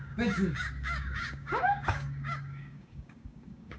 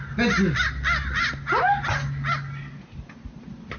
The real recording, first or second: second